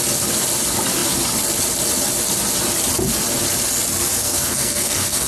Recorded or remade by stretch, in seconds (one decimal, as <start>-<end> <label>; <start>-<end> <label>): 0.0-4.2 recorded; 4.2-5.3 remade